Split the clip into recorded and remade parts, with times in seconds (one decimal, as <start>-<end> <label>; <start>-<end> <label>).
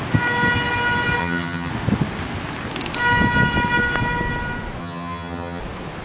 0.0-1.2 recorded; 1.2-1.7 remade; 1.7-4.8 recorded; 4.8-5.6 remade; 5.6-6.0 recorded